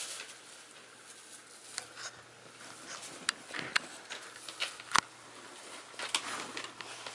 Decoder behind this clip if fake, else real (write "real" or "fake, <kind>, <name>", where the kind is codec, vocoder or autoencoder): real